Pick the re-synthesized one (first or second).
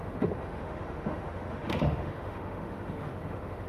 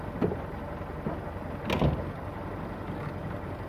first